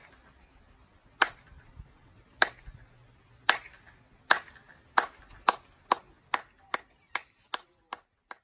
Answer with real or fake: real